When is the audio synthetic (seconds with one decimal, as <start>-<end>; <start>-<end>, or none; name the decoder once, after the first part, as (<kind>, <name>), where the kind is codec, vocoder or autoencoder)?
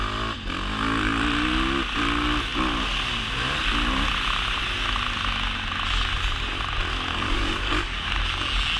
7.1-8.2 (codec, DAC)